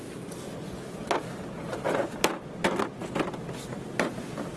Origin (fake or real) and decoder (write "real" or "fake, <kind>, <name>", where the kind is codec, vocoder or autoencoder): real